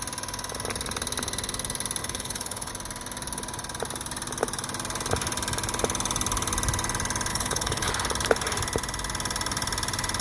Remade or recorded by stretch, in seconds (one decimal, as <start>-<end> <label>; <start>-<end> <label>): 0.0-2.0 recorded; 2.0-2.7 remade; 2.7-7.3 recorded; 7.3-7.9 remade; 7.9-10.2 recorded